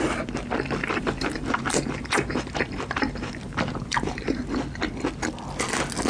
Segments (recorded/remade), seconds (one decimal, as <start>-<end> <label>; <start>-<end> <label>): 0.0-0.8 recorded; 0.8-4.5 remade; 4.5-6.1 recorded

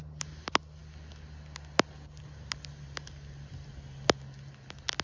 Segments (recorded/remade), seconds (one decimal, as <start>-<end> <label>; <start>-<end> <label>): 0.0-5.0 recorded

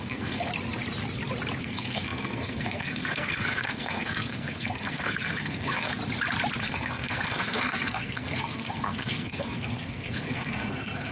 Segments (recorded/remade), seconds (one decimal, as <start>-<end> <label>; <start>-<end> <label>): 0.0-0.5 remade; 0.5-1.6 recorded; 1.6-6.0 remade; 6.0-6.6 recorded; 6.6-11.1 remade

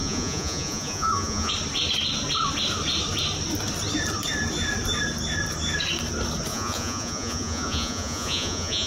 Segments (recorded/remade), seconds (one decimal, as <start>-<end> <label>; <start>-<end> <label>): 0.0-1.5 remade; 1.5-6.5 recorded; 6.5-8.9 remade